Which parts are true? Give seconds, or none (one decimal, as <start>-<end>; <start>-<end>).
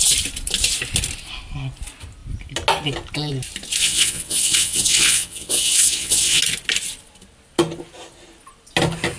0.0-3.8; 6.4-9.2